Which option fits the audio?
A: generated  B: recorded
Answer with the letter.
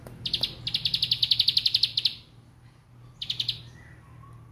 B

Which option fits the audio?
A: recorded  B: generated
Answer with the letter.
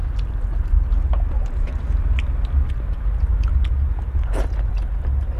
A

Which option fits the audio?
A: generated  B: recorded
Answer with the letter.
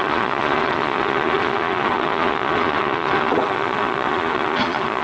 A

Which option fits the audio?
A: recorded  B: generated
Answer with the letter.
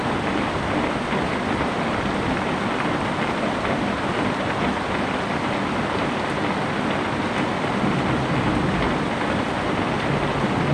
A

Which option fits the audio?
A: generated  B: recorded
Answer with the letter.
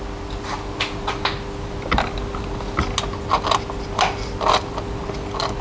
B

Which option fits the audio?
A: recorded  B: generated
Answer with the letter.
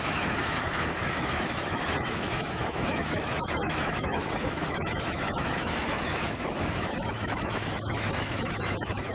B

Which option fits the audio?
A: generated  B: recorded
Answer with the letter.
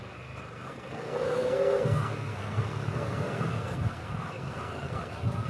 A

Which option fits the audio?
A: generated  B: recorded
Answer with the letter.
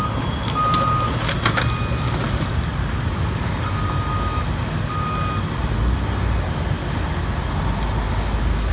B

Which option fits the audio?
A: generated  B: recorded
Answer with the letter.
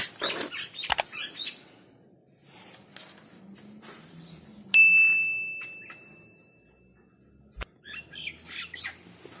B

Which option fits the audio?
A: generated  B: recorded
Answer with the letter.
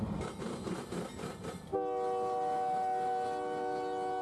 B